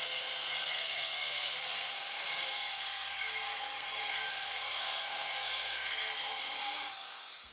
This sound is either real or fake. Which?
fake